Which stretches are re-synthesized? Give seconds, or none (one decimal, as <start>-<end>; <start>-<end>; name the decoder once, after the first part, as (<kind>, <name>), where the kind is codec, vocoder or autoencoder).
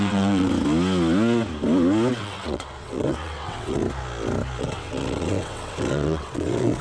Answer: 0.0-0.5 (vocoder, WaveNeXt); 2.1-3.8; 4.6-6.8